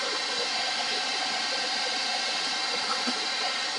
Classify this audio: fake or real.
real